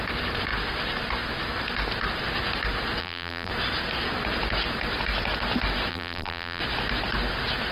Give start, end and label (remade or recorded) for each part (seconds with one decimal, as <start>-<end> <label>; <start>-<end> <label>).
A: 0.0-3.0 recorded; 3.0-3.5 remade; 3.5-5.9 recorded; 5.9-6.6 remade; 6.6-7.7 recorded